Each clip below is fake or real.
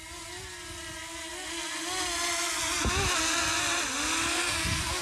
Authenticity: real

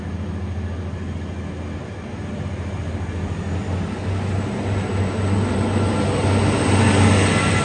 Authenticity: real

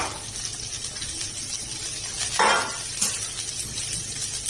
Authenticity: real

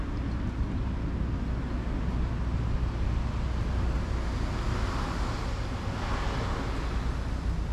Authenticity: real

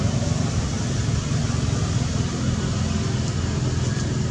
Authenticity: real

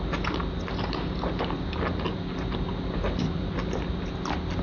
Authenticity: real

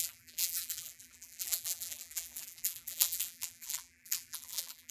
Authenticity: fake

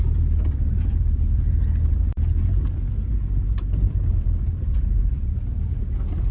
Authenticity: fake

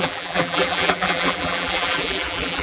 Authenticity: fake